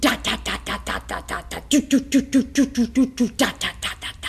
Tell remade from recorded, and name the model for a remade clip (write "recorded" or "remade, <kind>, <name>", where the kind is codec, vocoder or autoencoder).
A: recorded